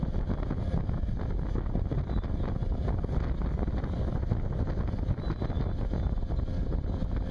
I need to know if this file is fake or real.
real